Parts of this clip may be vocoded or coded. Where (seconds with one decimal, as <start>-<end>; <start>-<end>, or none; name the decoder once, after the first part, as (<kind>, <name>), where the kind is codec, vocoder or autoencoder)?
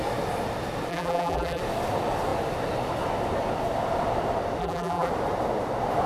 0.9-1.6 (vocoder, BigVGAN v2); 4.6-5.1